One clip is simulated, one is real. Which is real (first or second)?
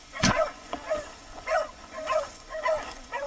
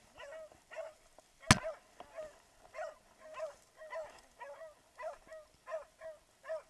second